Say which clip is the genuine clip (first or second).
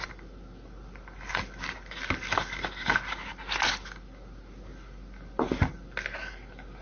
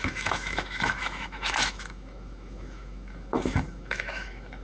first